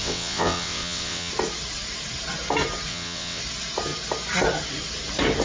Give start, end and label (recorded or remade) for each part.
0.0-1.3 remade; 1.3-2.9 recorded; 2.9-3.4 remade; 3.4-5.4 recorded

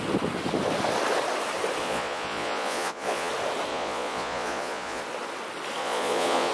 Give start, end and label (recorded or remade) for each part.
0.0-1.8 recorded; 1.8-3.3 remade; 3.3-3.7 recorded; 3.7-5.0 remade; 5.0-5.8 recorded; 5.8-6.5 remade

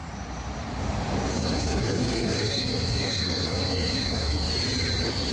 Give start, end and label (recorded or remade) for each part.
0.0-1.3 recorded; 1.3-4.5 remade; 4.5-5.3 recorded

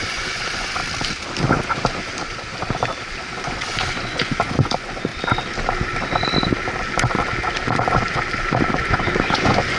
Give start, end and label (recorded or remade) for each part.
0.0-0.8 remade; 0.8-3.4 recorded; 3.4-5.1 remade; 5.1-8.8 recorded; 8.8-9.8 remade

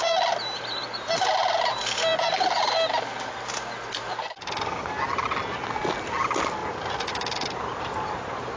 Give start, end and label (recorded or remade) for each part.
0.0-8.6 recorded